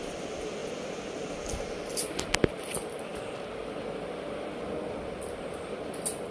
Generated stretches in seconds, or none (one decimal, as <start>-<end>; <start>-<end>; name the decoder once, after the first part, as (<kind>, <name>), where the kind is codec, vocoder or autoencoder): none